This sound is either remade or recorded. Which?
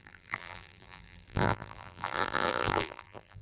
remade